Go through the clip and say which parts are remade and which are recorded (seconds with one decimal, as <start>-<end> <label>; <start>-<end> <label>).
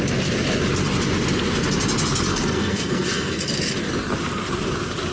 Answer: 0.0-2.3 recorded; 2.3-3.6 remade; 3.6-5.1 recorded